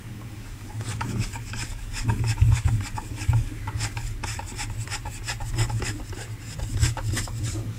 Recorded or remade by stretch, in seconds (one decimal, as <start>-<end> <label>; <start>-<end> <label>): 0.0-4.2 remade; 4.2-5.5 recorded; 5.5-6.0 remade; 6.0-6.7 recorded; 6.7-7.8 remade